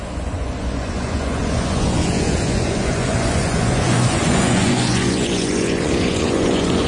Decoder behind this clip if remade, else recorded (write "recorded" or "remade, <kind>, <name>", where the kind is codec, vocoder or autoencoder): remade, vocoder, Vocos